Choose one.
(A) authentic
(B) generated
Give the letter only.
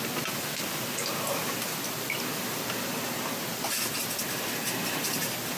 A